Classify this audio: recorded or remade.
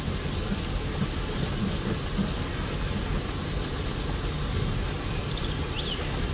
recorded